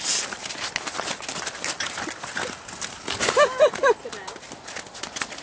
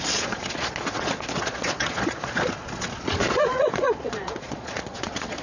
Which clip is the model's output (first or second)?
second